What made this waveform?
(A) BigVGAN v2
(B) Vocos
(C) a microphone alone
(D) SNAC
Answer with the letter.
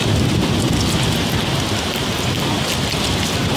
C